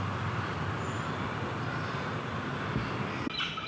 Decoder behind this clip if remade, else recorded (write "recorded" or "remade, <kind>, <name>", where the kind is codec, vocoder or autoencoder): recorded